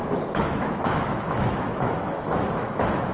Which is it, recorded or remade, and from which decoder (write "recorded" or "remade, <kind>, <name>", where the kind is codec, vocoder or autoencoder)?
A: remade, autoencoder, DAC-VAE